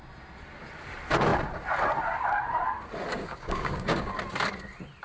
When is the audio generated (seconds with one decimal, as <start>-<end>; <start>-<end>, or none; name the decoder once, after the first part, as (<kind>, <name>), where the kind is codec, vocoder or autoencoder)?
3.1-4.1 (codec, DAC)